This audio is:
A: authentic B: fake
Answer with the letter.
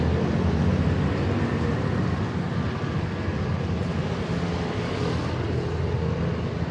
A